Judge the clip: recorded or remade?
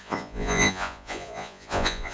remade